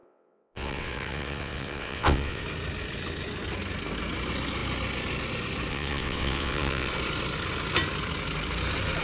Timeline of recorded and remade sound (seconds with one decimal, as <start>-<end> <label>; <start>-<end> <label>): 0.0-2.4 remade; 2.4-5.7 recorded; 5.7-6.9 remade; 6.9-9.0 recorded